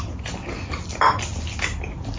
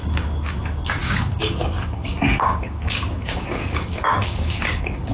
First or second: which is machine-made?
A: second